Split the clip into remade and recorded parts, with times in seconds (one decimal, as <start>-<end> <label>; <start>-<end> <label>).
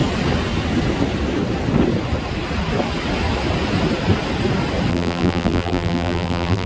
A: 0.0-4.9 recorded; 4.9-6.7 remade